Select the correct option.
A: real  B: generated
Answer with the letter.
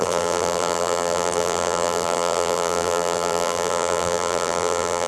B